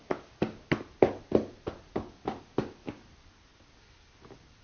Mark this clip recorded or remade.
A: recorded